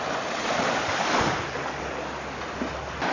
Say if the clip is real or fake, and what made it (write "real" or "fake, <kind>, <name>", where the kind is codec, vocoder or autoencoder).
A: real